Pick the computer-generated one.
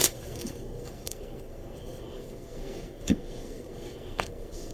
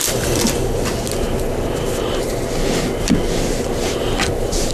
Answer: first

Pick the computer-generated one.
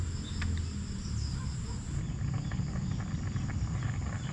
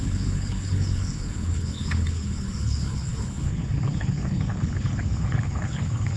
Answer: second